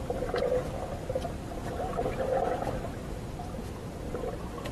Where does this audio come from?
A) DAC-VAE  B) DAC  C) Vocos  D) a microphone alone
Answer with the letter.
D